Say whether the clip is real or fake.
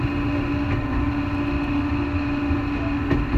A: real